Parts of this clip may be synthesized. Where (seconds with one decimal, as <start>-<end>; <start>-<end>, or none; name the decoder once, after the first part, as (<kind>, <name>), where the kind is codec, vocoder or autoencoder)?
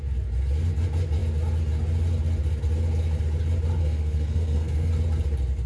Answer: 3.8-4.9 (codec, SNAC)